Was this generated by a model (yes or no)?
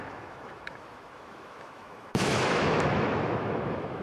yes